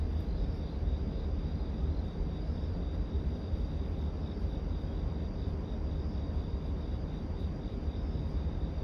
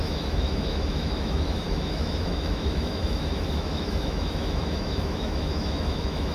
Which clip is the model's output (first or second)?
second